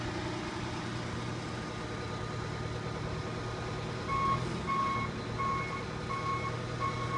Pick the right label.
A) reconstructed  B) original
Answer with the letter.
B